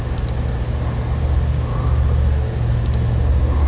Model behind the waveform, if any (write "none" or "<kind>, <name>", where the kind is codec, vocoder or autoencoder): none